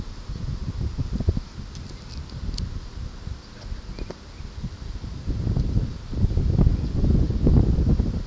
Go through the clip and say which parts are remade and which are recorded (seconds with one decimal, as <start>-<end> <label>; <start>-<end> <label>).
0.0-6.7 recorded; 6.7-7.5 remade; 7.5-8.3 recorded